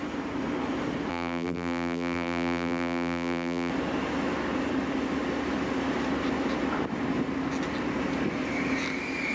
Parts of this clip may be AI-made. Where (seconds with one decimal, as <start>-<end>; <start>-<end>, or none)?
1.1-3.7